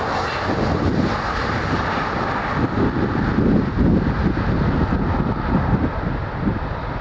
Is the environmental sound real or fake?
real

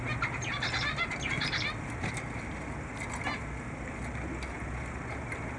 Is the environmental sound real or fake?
real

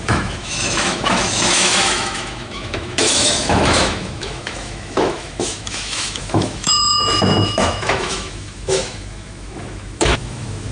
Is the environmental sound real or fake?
fake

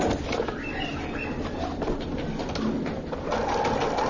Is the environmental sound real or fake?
real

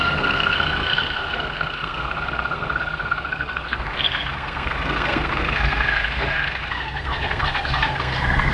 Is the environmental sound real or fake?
fake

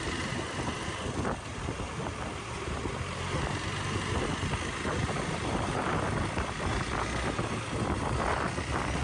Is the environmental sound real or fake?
real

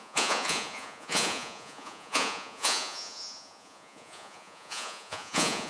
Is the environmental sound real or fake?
fake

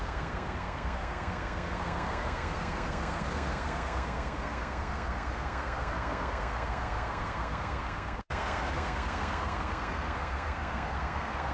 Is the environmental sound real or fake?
fake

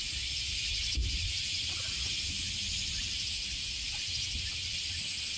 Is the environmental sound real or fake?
real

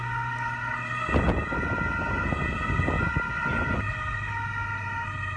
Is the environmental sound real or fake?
real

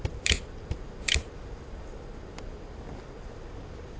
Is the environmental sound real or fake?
real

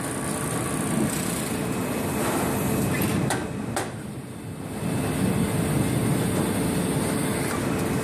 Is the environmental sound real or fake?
real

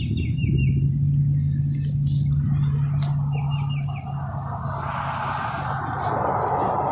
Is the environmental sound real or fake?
real